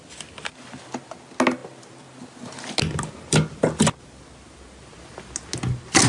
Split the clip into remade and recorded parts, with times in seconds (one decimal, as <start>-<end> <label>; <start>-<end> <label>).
0.0-6.1 recorded